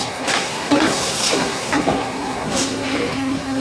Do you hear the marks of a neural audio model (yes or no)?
yes